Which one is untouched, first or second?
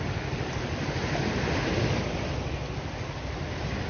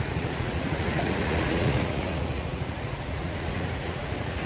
first